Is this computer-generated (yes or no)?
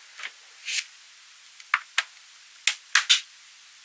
no